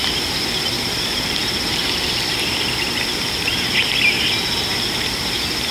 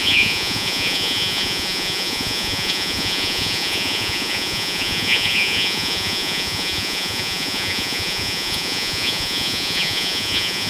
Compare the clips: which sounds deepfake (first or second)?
second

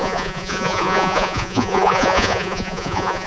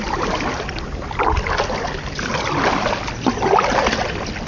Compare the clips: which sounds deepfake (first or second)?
first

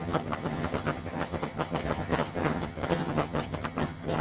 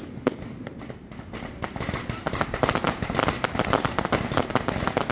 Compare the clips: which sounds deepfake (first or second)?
first